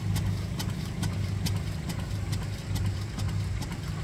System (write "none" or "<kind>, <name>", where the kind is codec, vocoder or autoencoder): none